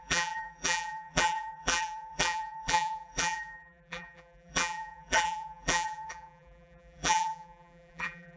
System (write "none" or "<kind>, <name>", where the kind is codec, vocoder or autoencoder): vocoder, BigVGAN v2